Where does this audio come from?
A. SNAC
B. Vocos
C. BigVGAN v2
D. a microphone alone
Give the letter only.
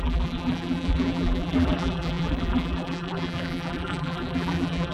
C